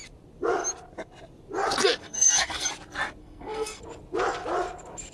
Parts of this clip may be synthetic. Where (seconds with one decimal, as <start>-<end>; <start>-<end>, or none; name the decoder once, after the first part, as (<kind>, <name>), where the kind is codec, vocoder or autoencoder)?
2.0-2.7 (codec, SNAC); 3.2-3.8